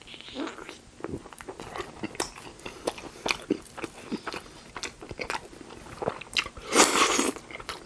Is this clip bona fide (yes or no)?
yes